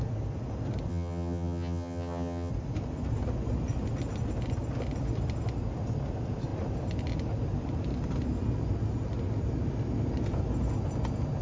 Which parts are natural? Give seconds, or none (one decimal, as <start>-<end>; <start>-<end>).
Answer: 0.0-0.9; 2.5-11.4

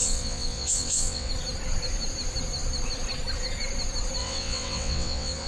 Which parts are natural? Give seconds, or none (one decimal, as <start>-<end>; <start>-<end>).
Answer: 1.3-4.2

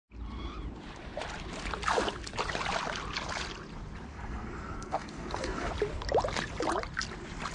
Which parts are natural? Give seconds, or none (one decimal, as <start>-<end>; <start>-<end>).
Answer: 0.0-4.1; 5.7-7.5

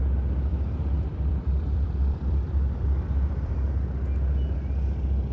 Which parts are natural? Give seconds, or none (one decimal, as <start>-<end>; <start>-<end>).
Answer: 0.0-0.5; 3.7-5.3